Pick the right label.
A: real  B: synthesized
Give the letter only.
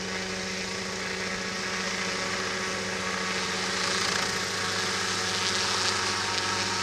A